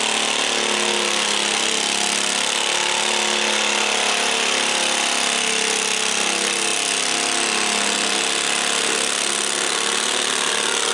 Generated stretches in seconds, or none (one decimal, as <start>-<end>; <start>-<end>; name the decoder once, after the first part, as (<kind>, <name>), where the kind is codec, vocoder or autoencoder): none